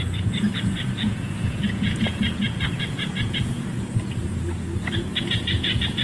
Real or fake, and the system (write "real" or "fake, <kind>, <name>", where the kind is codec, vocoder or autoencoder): fake, vocoder, Vocos